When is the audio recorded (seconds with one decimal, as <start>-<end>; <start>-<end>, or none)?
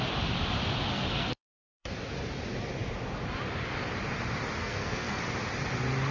0.0-0.9; 1.9-4.6; 5.2-6.1